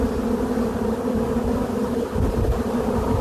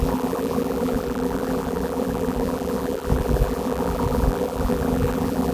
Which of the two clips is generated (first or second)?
second